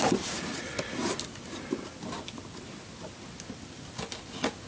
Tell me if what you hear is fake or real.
real